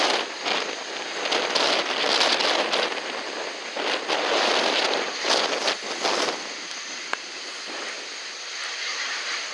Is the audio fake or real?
real